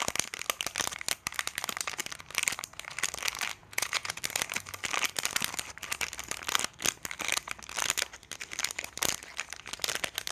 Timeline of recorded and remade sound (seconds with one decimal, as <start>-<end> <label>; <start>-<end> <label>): 0.0-3.6 recorded; 3.6-4.2 remade; 4.2-10.3 recorded